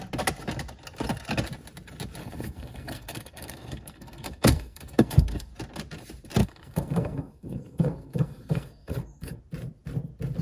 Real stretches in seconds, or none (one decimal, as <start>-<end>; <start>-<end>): 0.0-2.2; 5.5-6.4; 9.4-10.4